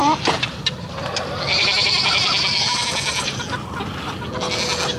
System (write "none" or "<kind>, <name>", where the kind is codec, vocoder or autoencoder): none